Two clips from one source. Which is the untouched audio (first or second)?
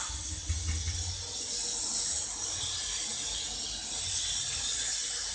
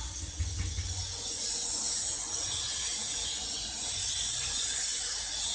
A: first